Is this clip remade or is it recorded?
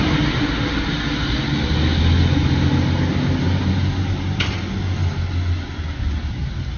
recorded